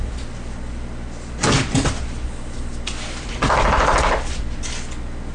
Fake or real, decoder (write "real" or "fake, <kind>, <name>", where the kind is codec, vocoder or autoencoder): real